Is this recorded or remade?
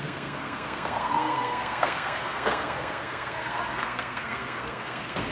remade